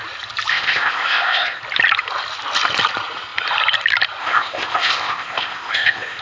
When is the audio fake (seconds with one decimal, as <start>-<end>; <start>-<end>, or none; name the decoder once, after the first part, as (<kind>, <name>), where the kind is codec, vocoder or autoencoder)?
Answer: 0.5-1.6 (codec, ZipCodec); 4.2-6.2